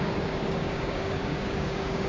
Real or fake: fake